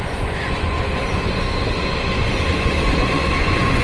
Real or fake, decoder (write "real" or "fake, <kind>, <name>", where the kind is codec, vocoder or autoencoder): fake, vocoder, Vocos